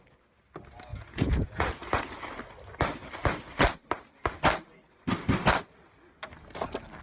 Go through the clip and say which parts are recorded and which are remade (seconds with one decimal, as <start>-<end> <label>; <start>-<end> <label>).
0.0-0.9 recorded; 0.9-2.0 remade; 2.0-7.0 recorded